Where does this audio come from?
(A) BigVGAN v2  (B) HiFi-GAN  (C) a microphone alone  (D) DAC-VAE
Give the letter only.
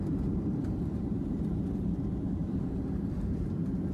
A